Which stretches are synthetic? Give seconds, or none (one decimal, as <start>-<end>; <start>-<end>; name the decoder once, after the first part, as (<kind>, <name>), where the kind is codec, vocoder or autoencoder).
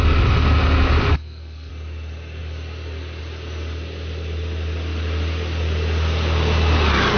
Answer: 1.1-1.7 (codec, SNAC)